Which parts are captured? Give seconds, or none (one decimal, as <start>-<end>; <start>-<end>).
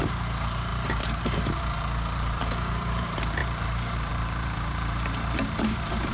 none